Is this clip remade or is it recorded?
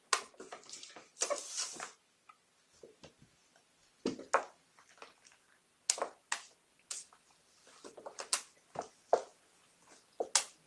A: recorded